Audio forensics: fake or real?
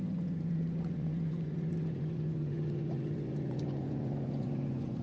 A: fake